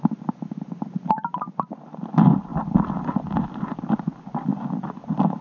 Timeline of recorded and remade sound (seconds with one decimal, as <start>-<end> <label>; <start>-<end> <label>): 0.0-2.5 recorded; 2.5-3.2 remade; 3.2-5.4 recorded